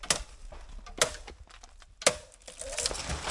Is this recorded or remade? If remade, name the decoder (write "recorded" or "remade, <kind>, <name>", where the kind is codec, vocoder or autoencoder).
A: recorded